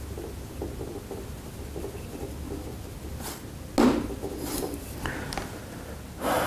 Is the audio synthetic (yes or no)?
no